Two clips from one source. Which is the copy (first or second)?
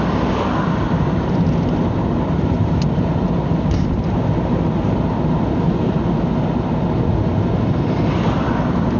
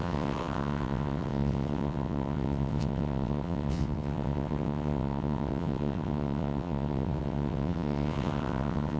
second